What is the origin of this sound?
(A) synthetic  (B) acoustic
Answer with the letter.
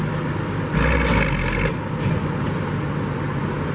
B